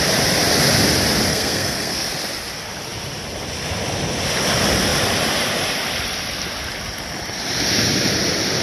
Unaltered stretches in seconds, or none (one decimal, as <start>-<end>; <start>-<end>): 0.0-1.3; 2.1-8.6